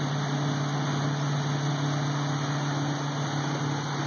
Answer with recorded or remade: recorded